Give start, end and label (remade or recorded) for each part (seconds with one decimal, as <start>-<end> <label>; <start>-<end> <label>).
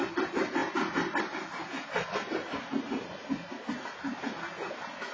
0.0-5.1 recorded